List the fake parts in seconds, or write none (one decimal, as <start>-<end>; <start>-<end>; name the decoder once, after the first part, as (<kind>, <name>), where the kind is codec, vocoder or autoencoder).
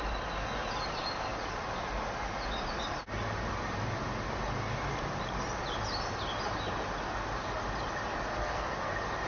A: 8.3-8.9 (codec, SNAC)